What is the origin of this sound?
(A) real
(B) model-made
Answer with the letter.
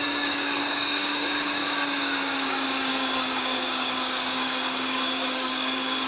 B